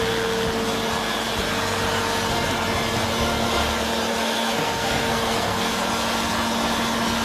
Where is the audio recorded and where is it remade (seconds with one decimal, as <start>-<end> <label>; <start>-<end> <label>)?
0.0-4.1 recorded; 4.1-5.7 remade; 5.7-7.2 recorded